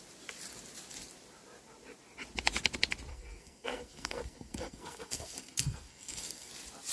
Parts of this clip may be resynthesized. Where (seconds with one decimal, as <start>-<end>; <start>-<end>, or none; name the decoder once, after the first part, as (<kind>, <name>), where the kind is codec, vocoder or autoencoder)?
3.1-6.5 (codec, SNAC)